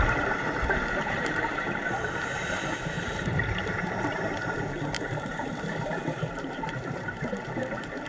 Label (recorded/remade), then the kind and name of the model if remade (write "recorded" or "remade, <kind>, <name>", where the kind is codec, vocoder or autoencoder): remade, vocoder, BigVGAN v2